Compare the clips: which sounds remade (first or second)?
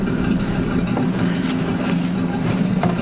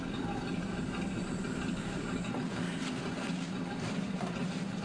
second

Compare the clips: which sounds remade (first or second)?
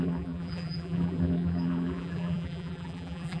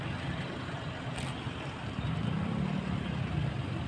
first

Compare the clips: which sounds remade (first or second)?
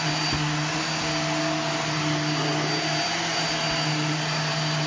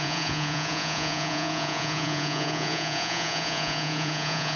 second